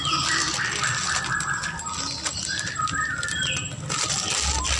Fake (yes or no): no